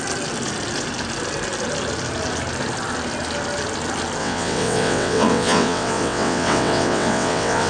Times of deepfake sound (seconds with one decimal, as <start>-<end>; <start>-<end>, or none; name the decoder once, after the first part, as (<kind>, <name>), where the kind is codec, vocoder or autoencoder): 4.2-7.7 (vocoder, WaveNeXt)